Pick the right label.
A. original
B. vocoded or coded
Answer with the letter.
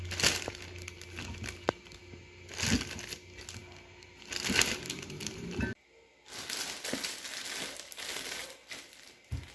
A